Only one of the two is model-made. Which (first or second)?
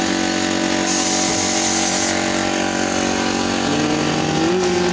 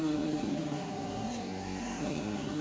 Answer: second